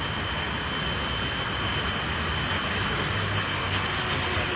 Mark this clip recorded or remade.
recorded